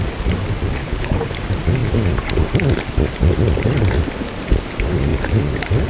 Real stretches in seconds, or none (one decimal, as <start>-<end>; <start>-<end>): 0.0-0.8; 1.3-5.9